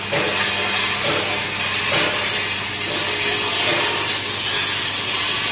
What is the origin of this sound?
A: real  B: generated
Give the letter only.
A